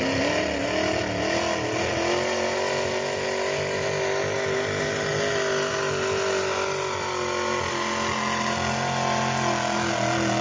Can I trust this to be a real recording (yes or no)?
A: yes